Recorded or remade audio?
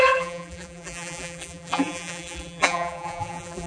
remade